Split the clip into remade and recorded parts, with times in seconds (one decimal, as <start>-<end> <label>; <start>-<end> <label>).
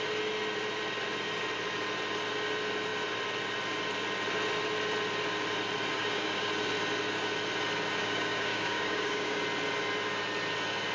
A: 0.0-5.9 recorded; 5.9-6.5 remade; 6.5-8.0 recorded; 8.0-9.4 remade; 9.4-10.9 recorded